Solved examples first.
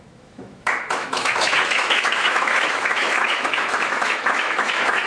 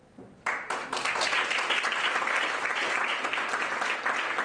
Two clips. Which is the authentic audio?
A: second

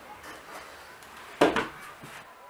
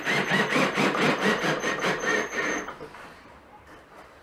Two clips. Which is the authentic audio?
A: first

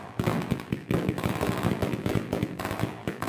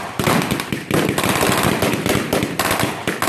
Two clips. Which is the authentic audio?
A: second